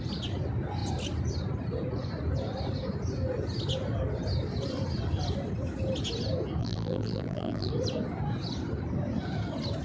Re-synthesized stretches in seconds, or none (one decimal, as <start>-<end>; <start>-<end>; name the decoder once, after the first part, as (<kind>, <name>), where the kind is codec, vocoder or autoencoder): 6.6-7.7 (vocoder, BigVGAN v2)